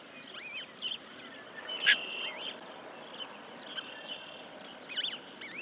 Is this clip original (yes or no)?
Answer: yes